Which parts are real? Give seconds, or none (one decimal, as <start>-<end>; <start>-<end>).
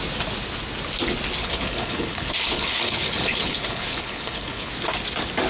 0.0-1.4; 4.7-5.5